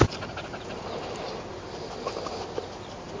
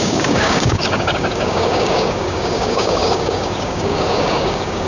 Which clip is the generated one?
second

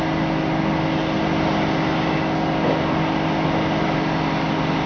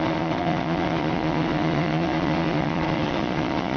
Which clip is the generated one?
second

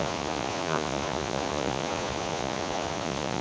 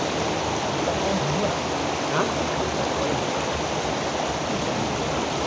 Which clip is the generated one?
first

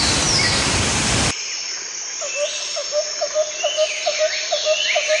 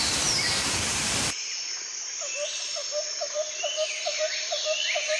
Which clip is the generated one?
second